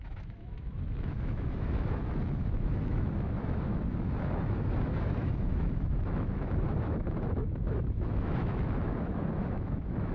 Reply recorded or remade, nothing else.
remade